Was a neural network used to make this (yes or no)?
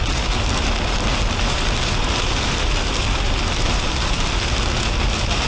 no